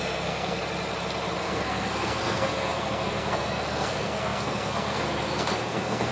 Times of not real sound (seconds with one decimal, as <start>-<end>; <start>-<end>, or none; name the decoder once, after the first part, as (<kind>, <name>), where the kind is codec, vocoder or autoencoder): 0.0-0.6 (codec, SNAC); 1.4-6.1